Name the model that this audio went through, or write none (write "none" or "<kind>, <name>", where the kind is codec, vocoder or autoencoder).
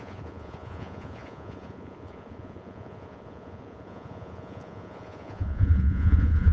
vocoder, Vocos